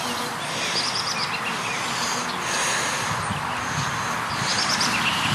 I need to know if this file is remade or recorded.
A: recorded